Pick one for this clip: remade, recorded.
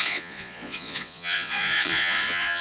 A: remade